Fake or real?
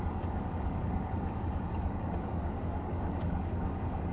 fake